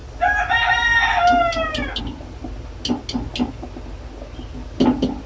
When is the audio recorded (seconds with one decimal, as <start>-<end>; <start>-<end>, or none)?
0.0-5.3